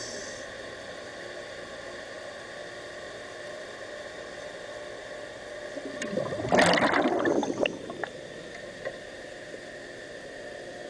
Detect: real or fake real